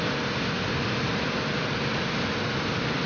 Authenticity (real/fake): real